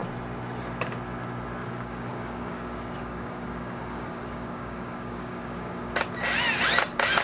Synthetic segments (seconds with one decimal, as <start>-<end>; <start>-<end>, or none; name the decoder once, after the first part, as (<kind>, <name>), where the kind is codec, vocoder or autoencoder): 1.6-5.9 (codec, DAC)